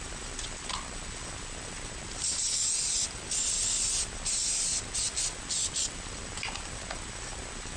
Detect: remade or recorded recorded